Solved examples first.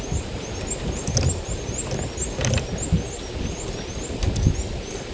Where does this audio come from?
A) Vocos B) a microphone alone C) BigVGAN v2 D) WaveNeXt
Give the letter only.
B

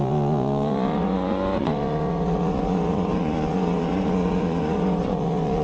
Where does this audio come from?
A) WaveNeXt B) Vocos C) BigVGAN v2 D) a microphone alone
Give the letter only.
B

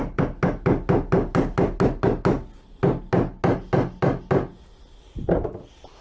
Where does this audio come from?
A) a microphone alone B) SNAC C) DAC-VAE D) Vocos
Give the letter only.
A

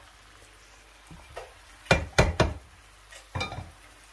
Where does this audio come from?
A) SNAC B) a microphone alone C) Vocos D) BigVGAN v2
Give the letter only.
B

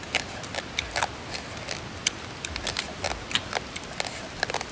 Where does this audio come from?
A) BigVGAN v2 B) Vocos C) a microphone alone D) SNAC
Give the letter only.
C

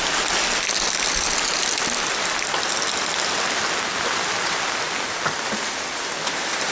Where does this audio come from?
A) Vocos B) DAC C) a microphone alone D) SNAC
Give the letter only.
C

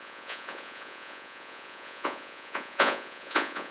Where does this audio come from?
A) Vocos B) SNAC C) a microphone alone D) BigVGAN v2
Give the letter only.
A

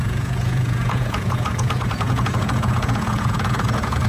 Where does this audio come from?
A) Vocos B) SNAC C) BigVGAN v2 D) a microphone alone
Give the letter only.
A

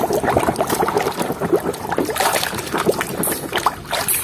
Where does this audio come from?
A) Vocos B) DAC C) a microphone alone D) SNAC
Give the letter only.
C